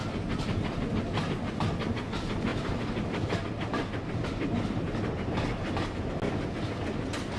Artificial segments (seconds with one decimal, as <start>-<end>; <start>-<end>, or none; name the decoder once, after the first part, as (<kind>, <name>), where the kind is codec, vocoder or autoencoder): none